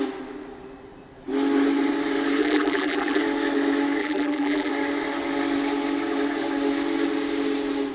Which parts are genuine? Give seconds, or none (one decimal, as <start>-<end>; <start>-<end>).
0.0-2.4; 3.2-4.0; 4.7-7.9